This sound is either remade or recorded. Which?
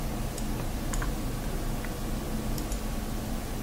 recorded